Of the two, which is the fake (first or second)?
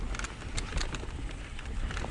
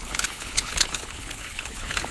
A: second